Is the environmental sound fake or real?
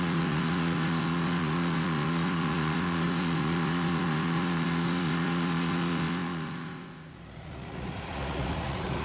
fake